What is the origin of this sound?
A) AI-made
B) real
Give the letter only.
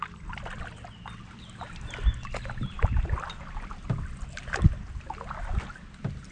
B